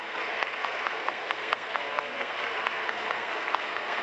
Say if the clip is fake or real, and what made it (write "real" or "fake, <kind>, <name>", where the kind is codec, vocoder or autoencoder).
fake, codec, SNAC